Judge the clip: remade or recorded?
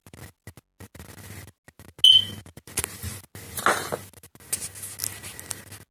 recorded